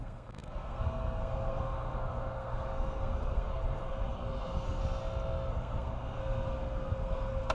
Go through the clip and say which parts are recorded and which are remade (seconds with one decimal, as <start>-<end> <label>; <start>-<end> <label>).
0.0-4.8 remade; 4.8-5.5 recorded; 5.5-7.5 remade